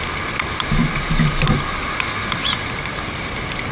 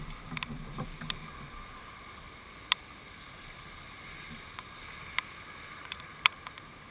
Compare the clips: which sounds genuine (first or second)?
first